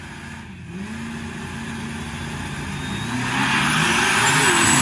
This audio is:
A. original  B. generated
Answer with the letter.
A